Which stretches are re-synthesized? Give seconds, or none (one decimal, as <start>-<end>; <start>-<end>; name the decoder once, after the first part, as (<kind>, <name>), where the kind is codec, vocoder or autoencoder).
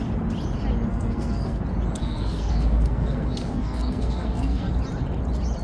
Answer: 0.9-1.6 (codec, SNAC); 2.0-4.7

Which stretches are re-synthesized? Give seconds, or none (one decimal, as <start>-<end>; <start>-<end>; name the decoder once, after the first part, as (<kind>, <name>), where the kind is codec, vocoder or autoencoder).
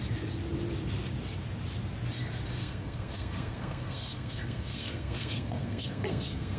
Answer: 2.6-6.6 (codec, SNAC)